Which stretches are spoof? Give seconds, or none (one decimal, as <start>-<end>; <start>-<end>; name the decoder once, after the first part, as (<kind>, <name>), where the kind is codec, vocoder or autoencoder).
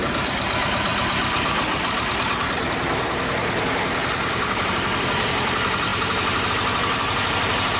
0.0-7.8 (vocoder, BigVGAN v2)